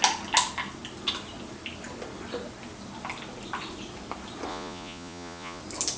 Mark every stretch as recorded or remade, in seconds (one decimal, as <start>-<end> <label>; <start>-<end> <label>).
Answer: 0.0-4.5 recorded; 4.5-5.6 remade; 5.6-6.0 recorded